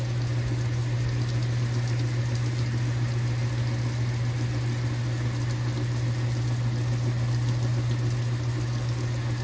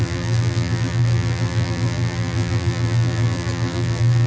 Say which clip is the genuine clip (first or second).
first